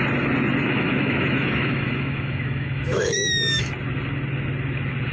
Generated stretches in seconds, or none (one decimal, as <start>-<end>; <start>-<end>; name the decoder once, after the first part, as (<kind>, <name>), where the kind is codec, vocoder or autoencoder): 0.6-3.7 (autoencoder, DAC-VAE)